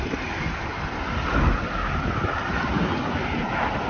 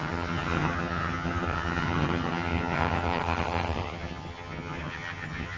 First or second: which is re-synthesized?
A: second